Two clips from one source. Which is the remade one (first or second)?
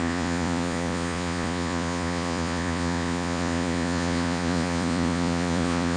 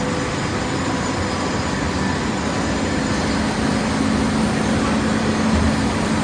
first